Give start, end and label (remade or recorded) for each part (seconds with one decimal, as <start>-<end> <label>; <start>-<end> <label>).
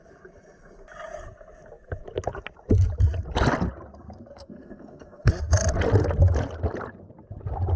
0.0-4.3 recorded; 4.3-5.3 remade; 5.3-7.8 recorded